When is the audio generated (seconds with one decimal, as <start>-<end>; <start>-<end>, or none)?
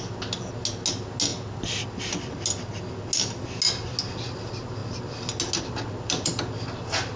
none